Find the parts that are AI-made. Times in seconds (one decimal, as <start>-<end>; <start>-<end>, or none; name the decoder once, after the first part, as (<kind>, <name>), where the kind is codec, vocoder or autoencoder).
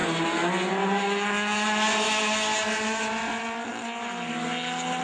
none